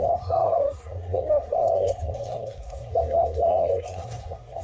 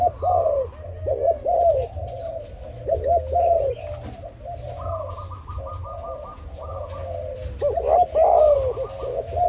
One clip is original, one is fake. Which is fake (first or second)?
first